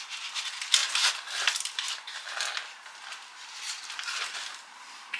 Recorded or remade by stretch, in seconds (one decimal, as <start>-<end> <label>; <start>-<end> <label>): 0.0-5.2 recorded